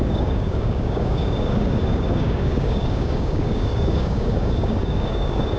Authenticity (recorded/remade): remade